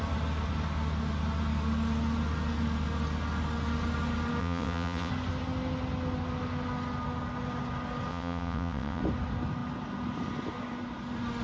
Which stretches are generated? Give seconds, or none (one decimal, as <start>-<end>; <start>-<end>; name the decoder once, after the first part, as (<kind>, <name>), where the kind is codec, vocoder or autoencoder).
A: 4.4-5.1 (vocoder, WaveNeXt); 8.1-9.0